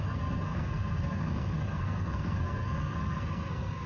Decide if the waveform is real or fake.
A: fake